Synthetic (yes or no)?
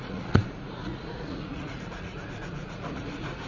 yes